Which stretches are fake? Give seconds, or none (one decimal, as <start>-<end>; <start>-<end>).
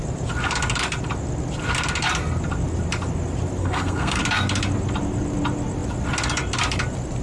3.6-4.2